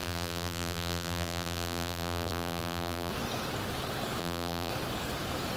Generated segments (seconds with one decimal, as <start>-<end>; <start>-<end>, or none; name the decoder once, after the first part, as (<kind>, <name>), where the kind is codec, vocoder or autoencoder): 0.0-3.1 (vocoder, BigVGAN v2); 4.2-4.7